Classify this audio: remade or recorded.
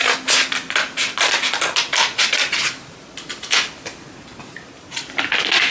recorded